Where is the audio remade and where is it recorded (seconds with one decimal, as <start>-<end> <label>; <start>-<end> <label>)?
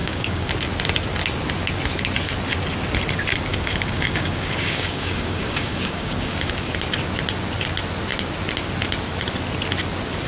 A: 0.0-0.5 remade; 0.5-3.5 recorded; 3.5-6.7 remade; 6.7-10.3 recorded